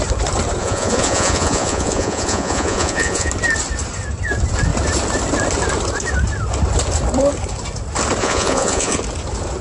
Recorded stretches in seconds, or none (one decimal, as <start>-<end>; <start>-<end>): 0.0-0.6; 3.3-8.2; 9.0-9.6